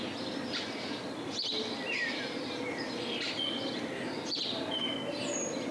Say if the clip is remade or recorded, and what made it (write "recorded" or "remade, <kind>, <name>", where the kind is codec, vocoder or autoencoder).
recorded